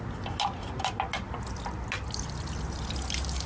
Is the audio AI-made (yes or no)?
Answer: no